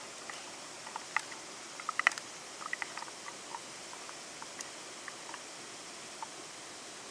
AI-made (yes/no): no